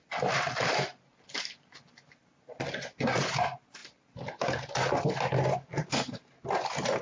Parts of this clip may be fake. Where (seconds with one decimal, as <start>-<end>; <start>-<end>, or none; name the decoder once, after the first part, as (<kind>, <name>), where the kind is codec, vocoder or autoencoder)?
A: none